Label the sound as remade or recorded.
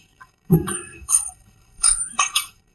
remade